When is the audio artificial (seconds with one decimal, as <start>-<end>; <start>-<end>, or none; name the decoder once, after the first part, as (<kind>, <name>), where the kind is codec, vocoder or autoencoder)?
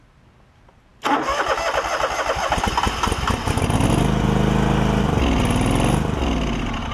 none